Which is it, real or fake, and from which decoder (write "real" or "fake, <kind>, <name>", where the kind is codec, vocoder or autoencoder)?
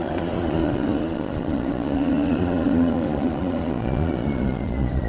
fake, vocoder, Vocos